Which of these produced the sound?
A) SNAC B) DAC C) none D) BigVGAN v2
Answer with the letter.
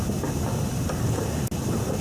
C